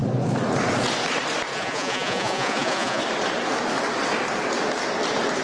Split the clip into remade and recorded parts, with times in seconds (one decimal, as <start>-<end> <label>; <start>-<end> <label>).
0.0-1.5 recorded; 1.5-3.0 remade; 3.0-5.4 recorded